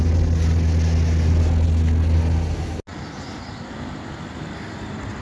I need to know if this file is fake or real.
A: real